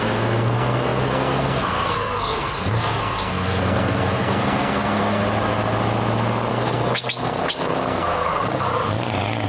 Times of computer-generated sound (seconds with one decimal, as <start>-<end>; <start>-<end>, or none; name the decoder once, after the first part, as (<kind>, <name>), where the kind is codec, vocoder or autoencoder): 0.0-5.2 (codec, SNAC); 6.5-8.7